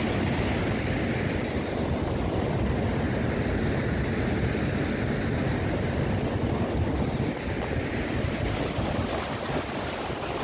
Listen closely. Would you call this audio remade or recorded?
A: recorded